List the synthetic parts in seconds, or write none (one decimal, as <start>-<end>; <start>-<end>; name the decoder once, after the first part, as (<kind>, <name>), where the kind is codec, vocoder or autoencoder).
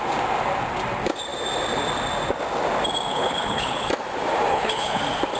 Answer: 3.1-3.9 (codec, HILCodec); 4.5-5.0